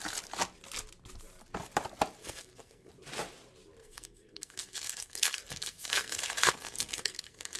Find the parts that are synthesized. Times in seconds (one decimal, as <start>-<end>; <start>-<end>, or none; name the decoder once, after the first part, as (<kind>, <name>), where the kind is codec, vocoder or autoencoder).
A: 2.2-2.9 (codec, SNAC); 3.8-7.6